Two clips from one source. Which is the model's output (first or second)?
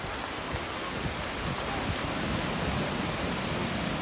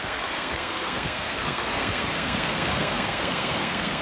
second